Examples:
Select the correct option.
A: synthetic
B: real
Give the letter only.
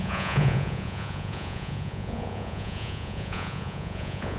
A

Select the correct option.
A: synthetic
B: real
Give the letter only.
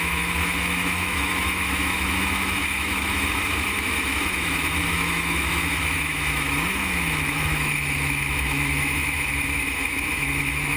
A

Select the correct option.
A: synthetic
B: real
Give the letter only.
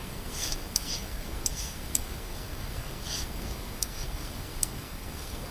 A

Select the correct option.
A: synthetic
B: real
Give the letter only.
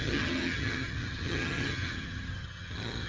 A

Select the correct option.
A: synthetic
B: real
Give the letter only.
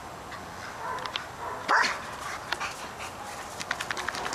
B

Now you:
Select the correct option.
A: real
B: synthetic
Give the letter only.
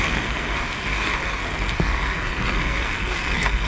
B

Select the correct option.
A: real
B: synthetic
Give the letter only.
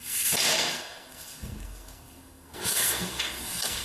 B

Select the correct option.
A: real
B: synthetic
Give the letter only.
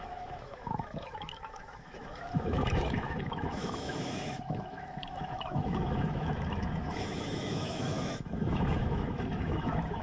B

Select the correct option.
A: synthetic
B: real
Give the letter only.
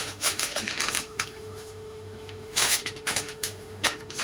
A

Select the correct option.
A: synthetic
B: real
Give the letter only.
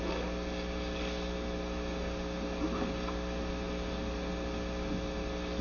B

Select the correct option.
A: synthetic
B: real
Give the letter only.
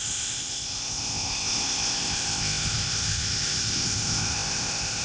A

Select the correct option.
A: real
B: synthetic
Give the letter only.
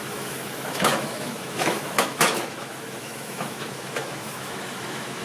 B